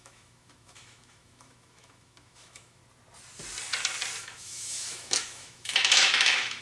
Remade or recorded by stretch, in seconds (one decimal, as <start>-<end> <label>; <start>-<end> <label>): 0.0-2.8 remade; 2.8-4.2 recorded; 4.2-6.6 remade